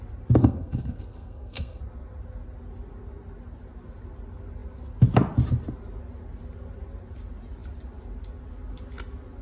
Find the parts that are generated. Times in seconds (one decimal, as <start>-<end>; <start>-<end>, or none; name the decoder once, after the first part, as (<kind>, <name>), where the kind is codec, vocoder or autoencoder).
0.4-1.8 (codec, SNAC)